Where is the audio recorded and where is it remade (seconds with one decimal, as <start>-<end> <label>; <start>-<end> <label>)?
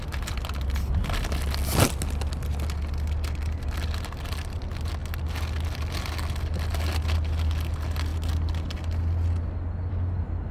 0.0-10.5 recorded